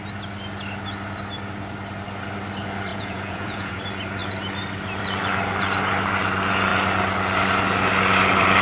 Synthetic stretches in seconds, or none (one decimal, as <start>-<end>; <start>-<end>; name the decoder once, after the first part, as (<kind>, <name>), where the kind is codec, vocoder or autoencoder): 2.9-3.8 (vocoder, Vocos)